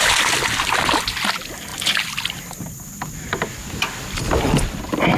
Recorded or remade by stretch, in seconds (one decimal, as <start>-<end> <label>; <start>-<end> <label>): 0.0-5.2 recorded